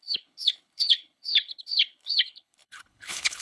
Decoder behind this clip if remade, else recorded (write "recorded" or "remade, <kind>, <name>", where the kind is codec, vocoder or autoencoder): remade, codec, HILCodec